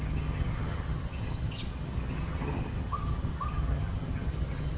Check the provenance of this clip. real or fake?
fake